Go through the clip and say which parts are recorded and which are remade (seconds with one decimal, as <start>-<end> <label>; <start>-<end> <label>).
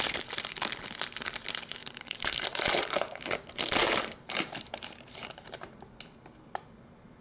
0.0-1.8 recorded; 1.8-3.4 remade; 3.4-3.8 recorded; 3.8-5.5 remade; 5.5-7.2 recorded